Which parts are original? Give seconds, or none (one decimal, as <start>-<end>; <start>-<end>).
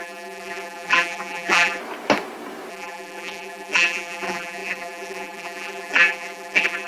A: 1.8-2.7